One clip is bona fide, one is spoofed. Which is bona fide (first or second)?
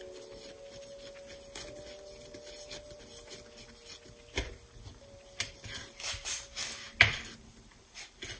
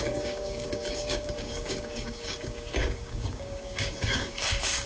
first